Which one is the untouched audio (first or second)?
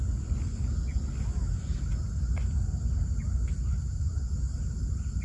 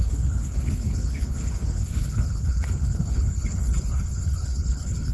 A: first